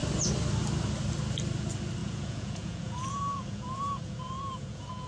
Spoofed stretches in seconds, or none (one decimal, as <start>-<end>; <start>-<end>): 2.0-5.1